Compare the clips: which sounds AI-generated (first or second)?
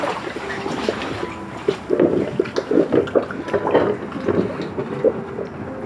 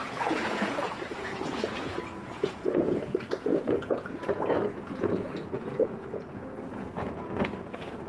second